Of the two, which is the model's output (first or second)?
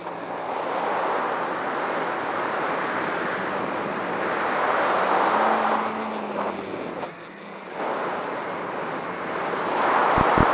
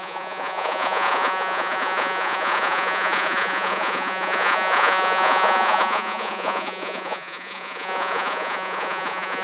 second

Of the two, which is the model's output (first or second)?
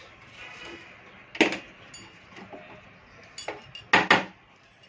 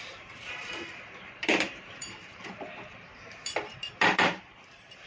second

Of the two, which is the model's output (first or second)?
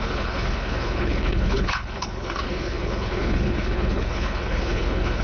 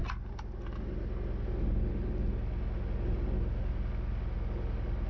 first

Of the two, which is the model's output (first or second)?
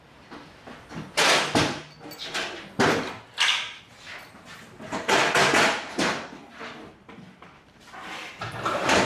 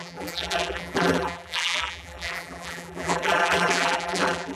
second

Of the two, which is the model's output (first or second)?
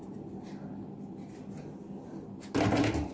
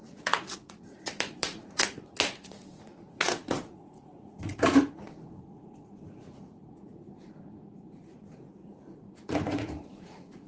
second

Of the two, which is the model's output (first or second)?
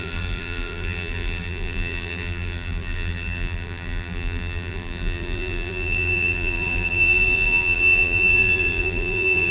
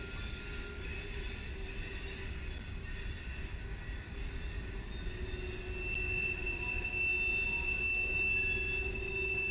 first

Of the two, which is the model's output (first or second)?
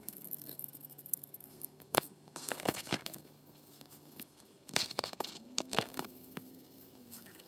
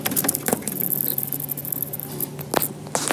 first